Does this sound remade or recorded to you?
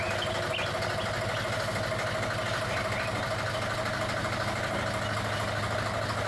recorded